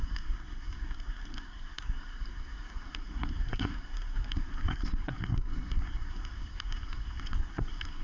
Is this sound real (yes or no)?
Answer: no